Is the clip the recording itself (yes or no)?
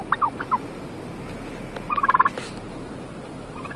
yes